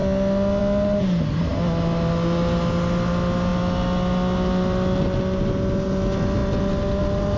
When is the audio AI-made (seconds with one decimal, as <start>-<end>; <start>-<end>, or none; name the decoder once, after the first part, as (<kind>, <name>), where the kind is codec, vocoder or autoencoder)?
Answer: none